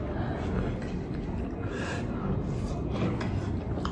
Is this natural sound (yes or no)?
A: yes